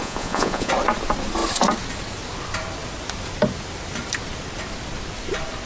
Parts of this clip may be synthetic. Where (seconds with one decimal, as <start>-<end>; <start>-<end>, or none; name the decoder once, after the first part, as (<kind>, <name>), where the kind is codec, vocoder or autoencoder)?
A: 0.0-0.7 (vocoder, Vocos)